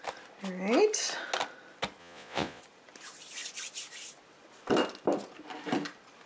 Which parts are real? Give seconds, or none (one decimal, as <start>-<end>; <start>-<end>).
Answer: 0.0-2.0; 2.6-6.3